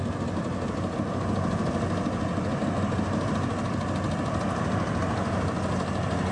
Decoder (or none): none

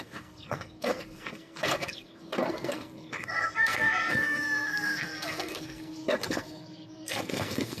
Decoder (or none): codec, SNAC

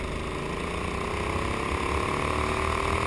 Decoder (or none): none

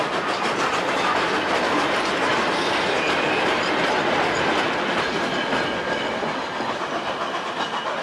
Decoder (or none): none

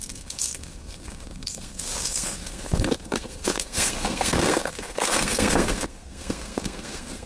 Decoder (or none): codec, SNAC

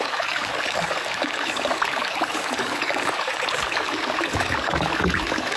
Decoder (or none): codec, DAC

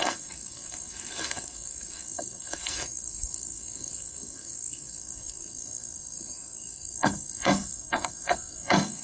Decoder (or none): codec, SNAC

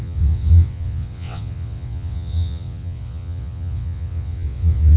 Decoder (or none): vocoder, WaveNeXt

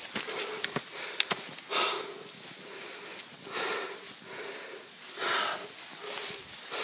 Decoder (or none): none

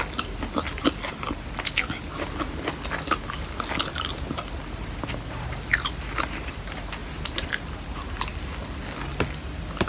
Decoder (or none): none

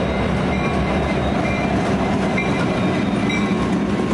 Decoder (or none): none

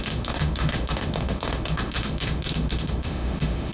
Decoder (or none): autoencoder, DAC-VAE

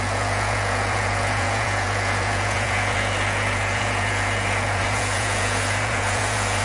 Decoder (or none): vocoder, Vocos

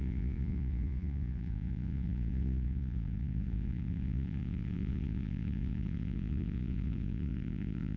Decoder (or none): vocoder, Vocos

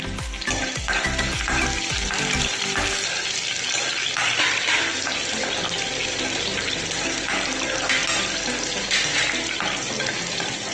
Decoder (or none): none